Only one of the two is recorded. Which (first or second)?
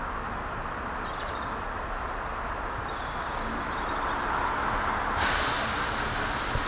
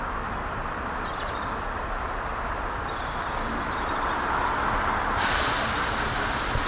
first